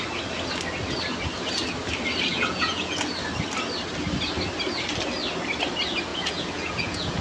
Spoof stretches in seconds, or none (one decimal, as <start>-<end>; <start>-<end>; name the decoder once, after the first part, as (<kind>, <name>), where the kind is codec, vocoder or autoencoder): 2.3-3.0 (vocoder, Vocos); 6.1-7.2